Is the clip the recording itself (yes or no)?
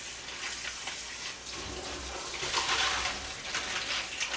yes